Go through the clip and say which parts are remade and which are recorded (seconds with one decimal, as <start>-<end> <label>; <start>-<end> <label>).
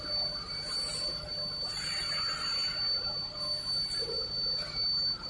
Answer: 0.0-5.3 recorded